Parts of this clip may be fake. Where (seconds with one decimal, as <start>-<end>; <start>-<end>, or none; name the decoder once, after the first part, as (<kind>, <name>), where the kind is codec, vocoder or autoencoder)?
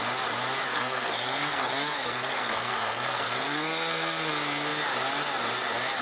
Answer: 0.7-4.3 (codec, SNAC)